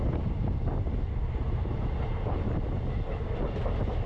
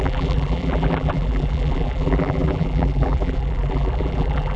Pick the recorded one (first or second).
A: first